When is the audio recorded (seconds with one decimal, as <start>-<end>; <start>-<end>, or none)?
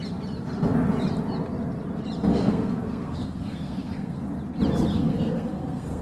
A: 0.0-2.3; 4.2-4.9